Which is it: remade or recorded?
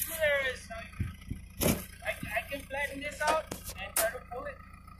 recorded